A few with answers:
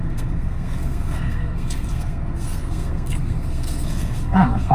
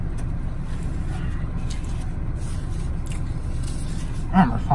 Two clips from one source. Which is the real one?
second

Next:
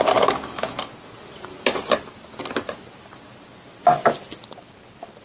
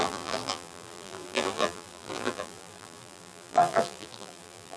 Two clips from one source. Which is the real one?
first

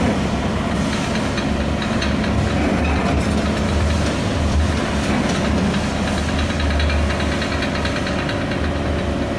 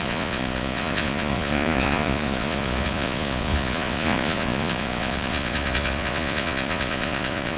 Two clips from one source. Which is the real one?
first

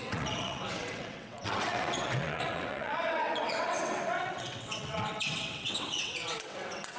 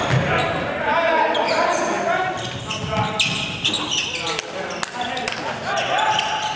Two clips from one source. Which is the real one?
second